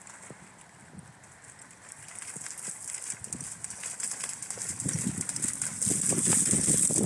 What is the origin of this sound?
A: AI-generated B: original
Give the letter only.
B